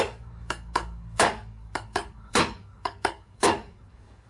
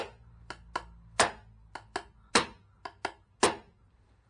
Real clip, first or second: second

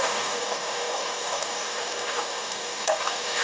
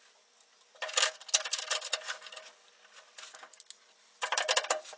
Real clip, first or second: second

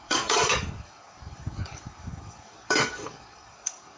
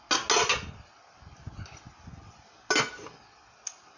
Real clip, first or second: second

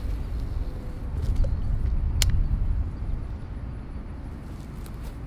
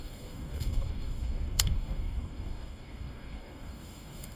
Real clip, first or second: first